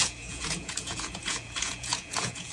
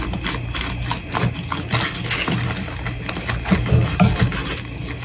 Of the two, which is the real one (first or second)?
second